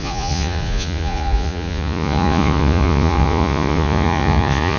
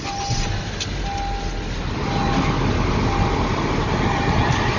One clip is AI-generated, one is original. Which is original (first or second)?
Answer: second